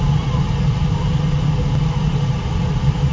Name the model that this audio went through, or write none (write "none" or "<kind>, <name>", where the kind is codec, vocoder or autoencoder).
none